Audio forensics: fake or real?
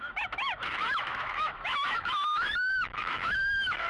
fake